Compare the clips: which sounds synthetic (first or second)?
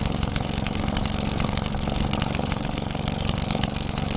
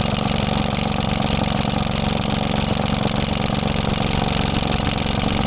first